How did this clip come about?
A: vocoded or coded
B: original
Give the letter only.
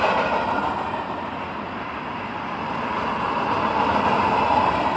B